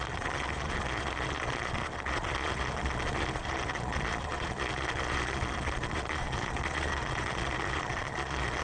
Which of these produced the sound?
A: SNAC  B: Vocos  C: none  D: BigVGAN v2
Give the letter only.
B